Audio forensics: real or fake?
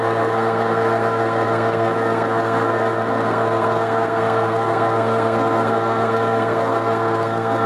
fake